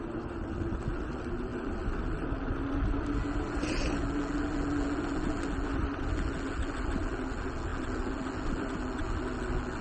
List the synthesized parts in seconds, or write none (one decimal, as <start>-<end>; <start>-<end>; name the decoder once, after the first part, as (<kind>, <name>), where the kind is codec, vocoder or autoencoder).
none